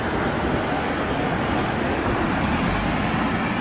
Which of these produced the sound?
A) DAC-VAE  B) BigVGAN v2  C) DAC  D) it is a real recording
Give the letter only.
D